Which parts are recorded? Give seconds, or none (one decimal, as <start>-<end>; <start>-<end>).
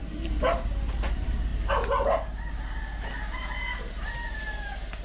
1.5-2.5